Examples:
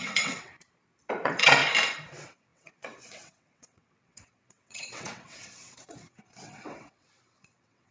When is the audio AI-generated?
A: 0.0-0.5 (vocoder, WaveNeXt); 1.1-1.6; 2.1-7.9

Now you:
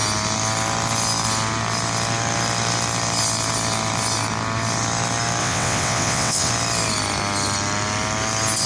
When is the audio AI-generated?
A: 5.4-6.5 (vocoder, WaveNeXt)